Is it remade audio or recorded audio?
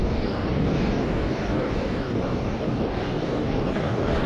remade